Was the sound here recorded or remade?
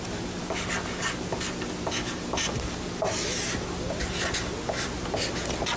recorded